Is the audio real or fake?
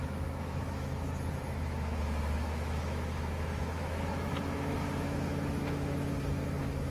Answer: fake